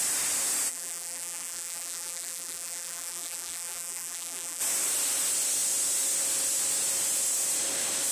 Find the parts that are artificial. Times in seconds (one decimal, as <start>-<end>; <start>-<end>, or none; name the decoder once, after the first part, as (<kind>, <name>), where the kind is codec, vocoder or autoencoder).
0.7-4.6 (vocoder, BigVGAN v2)